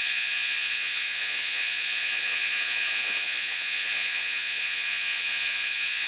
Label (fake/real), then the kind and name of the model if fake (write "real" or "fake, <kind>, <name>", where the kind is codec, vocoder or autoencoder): fake, vocoder, Vocos